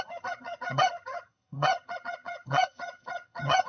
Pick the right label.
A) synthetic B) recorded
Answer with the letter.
A